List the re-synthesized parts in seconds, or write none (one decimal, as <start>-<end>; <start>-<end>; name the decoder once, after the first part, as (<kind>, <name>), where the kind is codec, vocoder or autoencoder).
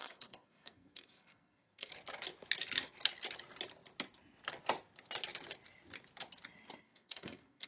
0.0-1.9 (codec, SNAC); 6.8-7.7